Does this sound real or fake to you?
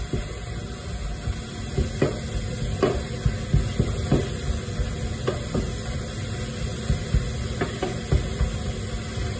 real